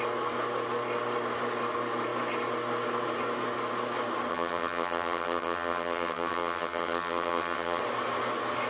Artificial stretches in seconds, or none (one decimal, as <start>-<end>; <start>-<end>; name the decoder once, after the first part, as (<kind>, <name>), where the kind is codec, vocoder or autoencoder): 4.3-7.8 (vocoder, HiFi-GAN)